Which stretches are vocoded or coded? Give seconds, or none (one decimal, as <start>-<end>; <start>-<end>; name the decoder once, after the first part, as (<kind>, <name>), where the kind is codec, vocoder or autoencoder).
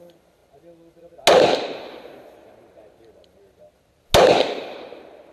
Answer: none